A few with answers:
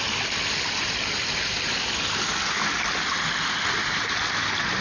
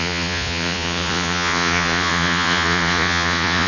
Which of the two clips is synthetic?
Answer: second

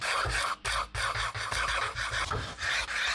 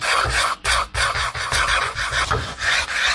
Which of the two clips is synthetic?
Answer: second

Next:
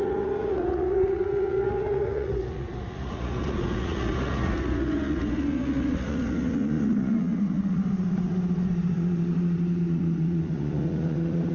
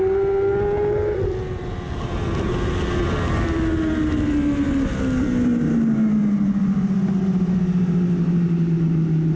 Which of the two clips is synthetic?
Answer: first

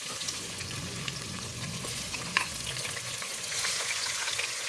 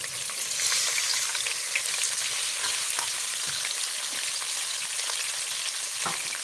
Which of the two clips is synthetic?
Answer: first